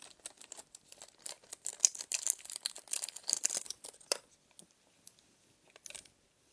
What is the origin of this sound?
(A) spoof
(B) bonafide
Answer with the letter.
B